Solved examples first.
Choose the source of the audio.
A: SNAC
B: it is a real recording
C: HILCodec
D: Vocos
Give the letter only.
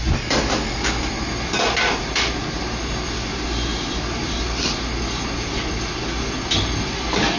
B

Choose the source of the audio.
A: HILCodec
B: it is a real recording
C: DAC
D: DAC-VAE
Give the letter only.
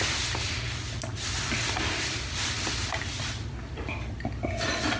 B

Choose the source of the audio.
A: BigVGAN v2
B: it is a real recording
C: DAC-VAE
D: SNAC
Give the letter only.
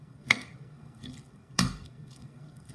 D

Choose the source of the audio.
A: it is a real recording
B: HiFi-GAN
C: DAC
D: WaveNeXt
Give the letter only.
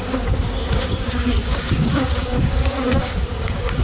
C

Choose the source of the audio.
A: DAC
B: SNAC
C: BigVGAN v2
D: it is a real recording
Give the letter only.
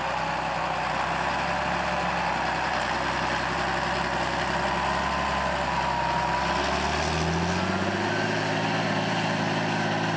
D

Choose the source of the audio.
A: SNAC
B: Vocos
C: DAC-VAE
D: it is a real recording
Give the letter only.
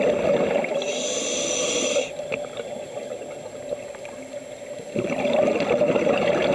D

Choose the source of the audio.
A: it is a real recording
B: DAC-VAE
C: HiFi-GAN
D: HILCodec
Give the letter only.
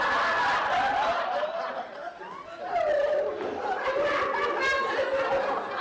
A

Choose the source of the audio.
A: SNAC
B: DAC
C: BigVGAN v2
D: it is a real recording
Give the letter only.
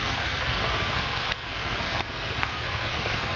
A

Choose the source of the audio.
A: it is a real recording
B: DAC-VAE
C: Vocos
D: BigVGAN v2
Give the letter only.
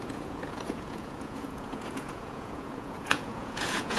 C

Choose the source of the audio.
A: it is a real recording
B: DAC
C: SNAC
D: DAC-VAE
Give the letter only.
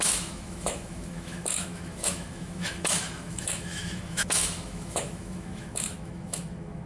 D